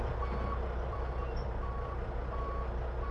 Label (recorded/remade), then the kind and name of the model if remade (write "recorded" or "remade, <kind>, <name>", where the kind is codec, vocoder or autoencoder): recorded